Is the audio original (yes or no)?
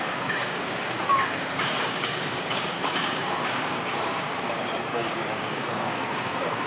no